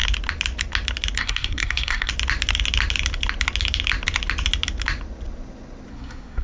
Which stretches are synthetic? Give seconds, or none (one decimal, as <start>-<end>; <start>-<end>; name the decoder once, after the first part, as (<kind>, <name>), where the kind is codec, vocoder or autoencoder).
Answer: 1.2-2.1 (codec, SNAC); 5.9-6.4